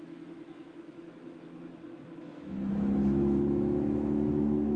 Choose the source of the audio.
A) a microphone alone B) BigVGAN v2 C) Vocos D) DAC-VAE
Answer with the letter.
D